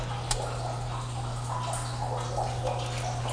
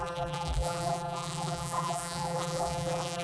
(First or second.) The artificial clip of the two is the second